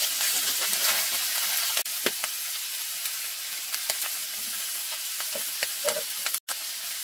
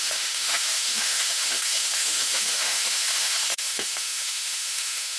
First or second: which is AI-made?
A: second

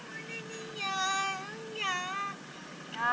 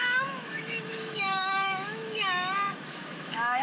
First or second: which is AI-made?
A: second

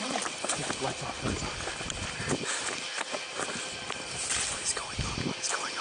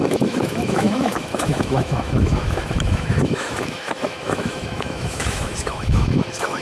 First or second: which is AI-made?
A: second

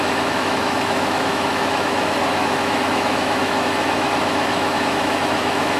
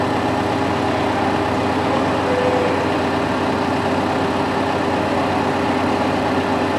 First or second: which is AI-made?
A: first